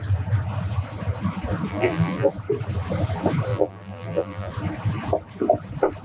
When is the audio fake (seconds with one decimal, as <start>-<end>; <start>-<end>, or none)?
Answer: 1.7-2.3; 3.5-4.5